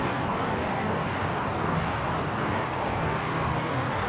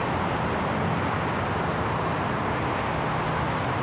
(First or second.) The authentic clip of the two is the second